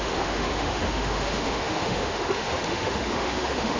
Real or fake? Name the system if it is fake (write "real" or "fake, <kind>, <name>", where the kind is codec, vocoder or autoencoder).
fake, autoencoder, DAC-VAE